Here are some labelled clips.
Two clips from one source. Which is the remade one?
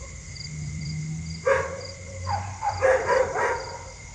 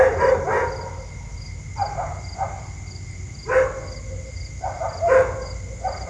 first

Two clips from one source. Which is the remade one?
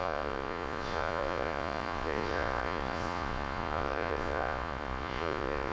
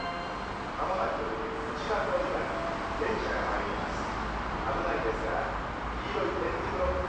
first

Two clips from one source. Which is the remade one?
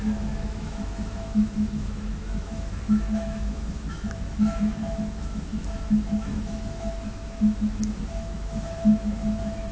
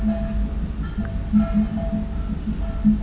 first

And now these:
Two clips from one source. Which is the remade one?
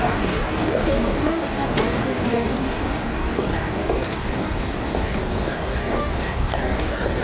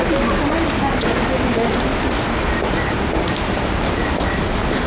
first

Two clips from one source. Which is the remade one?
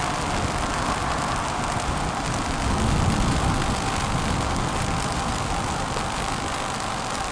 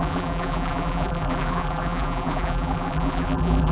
second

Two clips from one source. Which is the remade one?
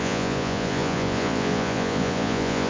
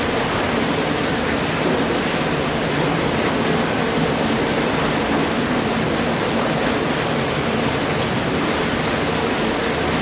first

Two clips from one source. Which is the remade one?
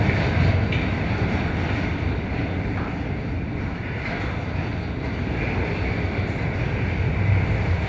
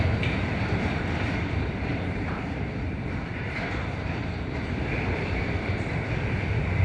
second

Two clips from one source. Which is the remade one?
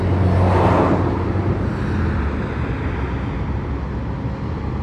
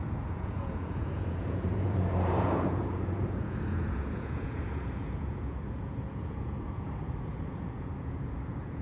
second